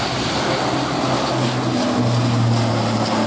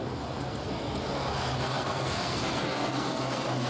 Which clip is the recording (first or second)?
first